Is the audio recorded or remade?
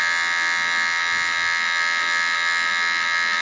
recorded